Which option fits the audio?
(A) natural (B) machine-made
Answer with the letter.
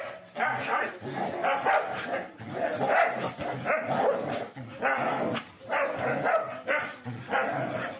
A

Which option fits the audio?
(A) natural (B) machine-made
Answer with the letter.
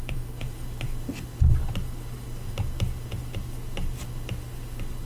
A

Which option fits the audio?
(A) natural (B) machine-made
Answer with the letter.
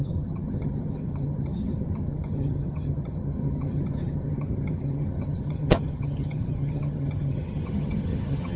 B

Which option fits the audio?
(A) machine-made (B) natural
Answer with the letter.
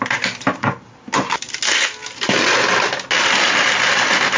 B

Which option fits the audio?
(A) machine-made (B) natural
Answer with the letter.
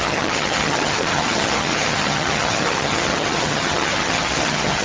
A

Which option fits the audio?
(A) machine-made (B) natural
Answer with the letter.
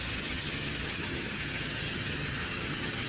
A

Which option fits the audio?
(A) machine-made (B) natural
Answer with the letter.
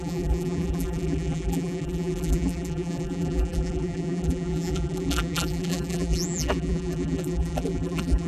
A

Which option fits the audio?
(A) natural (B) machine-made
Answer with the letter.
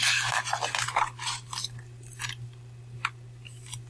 A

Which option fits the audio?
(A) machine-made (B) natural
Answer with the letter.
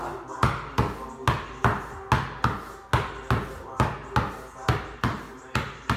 B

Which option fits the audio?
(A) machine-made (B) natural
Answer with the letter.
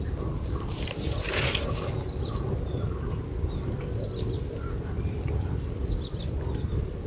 B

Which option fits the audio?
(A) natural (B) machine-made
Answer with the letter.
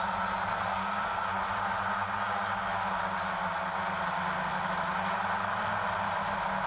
A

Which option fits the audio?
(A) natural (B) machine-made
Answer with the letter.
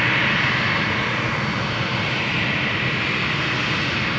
A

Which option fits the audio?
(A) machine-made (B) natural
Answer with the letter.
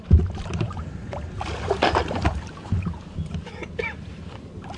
A